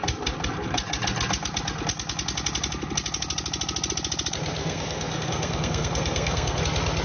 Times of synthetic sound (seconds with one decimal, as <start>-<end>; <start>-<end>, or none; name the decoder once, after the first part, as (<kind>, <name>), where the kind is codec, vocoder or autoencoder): 4.6-6.6 (codec, SNAC)